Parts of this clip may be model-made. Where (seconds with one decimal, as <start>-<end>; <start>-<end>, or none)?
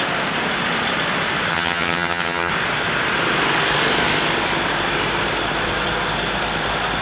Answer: 1.5-2.5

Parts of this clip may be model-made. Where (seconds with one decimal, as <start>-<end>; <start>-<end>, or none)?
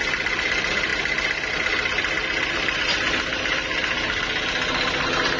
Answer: none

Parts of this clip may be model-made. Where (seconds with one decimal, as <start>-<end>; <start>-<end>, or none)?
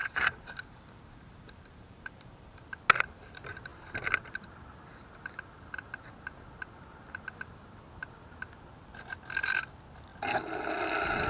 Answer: 0.0-2.6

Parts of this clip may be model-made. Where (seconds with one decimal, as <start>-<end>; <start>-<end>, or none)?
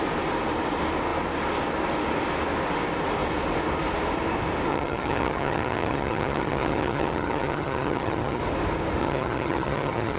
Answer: 4.7-8.4; 9.0-10.2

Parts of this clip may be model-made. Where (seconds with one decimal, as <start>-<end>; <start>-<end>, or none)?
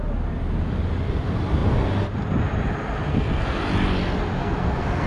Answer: 3.1-3.6; 4.4-5.1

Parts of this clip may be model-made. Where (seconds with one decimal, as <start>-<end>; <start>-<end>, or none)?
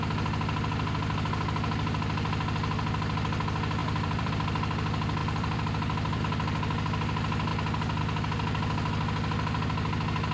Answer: 3.8-4.3; 5.2-6.2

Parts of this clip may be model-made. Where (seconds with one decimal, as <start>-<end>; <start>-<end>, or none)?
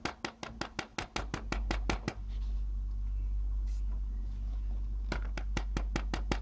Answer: none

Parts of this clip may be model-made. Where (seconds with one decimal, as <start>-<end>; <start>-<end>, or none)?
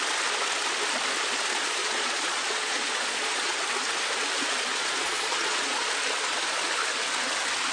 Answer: 1.8-3.5; 4.7-5.9